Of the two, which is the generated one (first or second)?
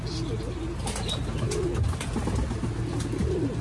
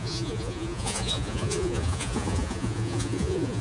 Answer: second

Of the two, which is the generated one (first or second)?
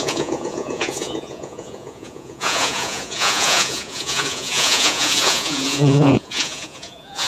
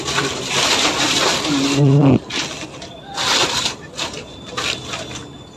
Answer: first